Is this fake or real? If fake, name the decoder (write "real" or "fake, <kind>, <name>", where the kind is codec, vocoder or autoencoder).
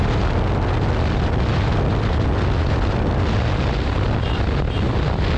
real